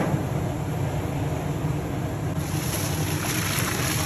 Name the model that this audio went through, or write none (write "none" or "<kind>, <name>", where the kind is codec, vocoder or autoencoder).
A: none